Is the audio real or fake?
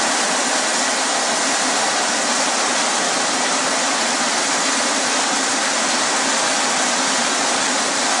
real